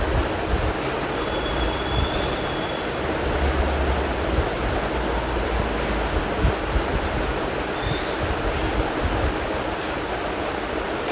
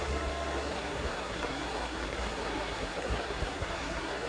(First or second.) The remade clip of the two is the second